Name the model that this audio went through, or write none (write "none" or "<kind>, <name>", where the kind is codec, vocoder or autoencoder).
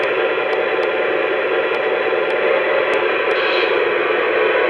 none